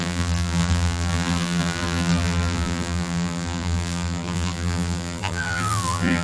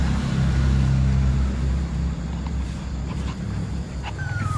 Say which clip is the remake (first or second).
first